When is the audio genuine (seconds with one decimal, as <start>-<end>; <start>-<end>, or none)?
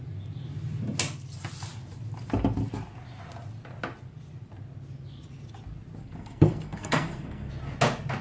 0.0-6.0; 7.5-8.2